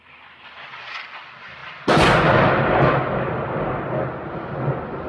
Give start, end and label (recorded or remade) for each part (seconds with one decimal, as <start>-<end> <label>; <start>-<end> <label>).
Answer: 0.0-1.6 remade; 1.6-5.1 recorded

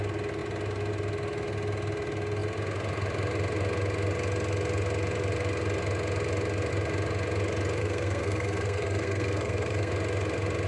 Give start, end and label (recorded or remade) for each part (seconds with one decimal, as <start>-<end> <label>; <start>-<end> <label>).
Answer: 0.0-7.8 recorded; 7.8-9.9 remade; 9.9-10.7 recorded

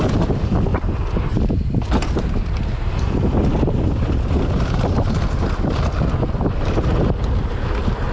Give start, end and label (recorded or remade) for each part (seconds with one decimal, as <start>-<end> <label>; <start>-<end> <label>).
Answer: 0.0-0.7 recorded; 0.7-1.5 remade; 1.5-8.1 recorded

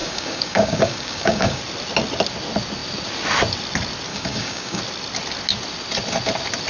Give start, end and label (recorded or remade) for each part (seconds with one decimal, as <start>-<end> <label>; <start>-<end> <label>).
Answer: 0.0-1.6 remade; 1.6-4.1 recorded; 4.1-4.8 remade; 4.8-6.7 recorded

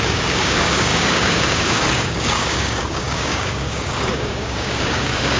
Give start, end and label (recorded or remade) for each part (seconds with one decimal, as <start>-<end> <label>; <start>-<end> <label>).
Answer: 0.0-5.4 remade